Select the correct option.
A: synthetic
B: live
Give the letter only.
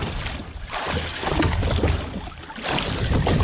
B